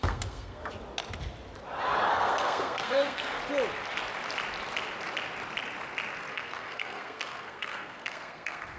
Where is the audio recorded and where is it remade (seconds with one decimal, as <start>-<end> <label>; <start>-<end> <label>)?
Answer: 0.0-0.6 remade; 0.6-2.1 recorded; 2.1-3.4 remade; 3.4-6.3 recorded; 6.3-8.8 remade